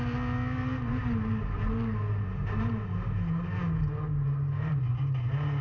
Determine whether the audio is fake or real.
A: real